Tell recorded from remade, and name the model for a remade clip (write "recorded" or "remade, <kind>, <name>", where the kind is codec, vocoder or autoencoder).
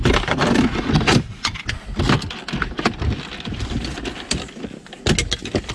recorded